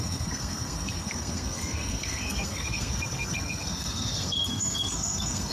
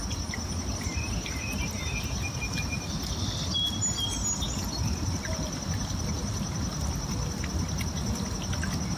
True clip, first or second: second